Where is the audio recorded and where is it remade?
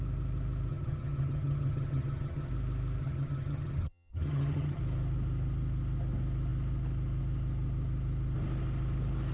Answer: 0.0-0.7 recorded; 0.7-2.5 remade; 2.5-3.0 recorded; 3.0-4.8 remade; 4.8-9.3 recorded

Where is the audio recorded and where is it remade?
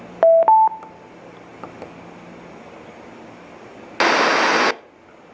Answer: 0.0-5.3 recorded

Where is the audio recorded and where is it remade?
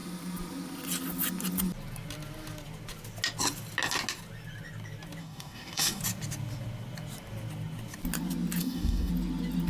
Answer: 0.0-5.2 recorded; 5.2-6.0 remade; 6.0-8.6 recorded; 8.6-9.1 remade; 9.1-9.7 recorded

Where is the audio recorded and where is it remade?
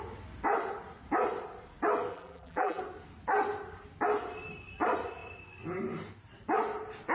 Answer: 0.0-2.1 recorded; 2.1-2.8 remade; 2.8-7.1 recorded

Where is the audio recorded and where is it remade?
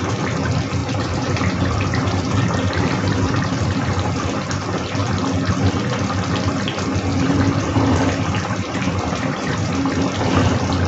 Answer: 0.0-0.8 recorded; 0.8-4.5 remade; 4.5-7.1 recorded; 7.1-9.7 remade; 9.7-10.9 recorded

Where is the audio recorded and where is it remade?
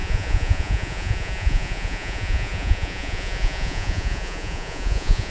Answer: 0.0-5.3 remade